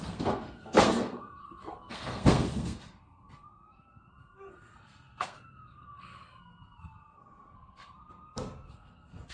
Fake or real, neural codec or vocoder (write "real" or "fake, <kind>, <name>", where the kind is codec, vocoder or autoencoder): fake, codec, SNAC